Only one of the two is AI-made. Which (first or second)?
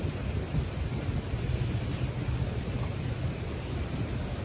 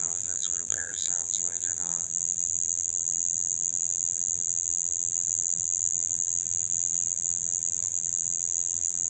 second